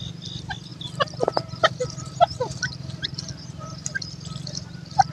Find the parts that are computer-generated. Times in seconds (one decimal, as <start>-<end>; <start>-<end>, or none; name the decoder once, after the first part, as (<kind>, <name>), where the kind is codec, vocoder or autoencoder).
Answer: 0.7-3.3 (vocoder, BigVGAN v2)